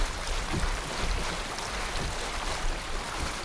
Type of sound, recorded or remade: recorded